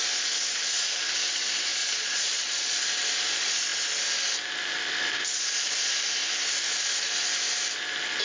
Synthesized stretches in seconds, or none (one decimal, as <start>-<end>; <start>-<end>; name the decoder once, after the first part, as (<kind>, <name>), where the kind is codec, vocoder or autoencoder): 1.8-2.4 (vocoder, Vocos)